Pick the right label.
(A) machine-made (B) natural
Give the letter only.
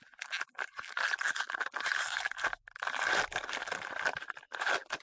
B